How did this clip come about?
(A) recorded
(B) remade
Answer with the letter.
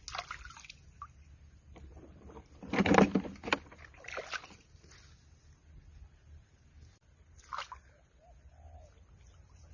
A